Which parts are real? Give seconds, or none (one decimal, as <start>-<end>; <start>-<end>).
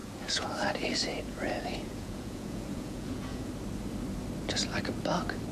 0.5-1.1; 3.5-5.5